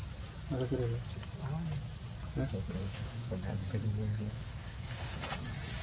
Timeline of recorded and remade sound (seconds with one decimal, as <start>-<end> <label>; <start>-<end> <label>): 0.0-2.8 recorded; 2.8-3.3 remade; 3.3-4.1 recorded; 4.1-5.2 remade; 5.2-5.8 recorded